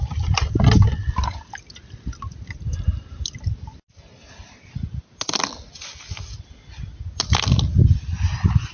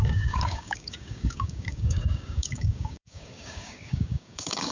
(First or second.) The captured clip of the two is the first